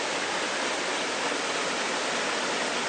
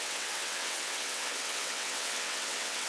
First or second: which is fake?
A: second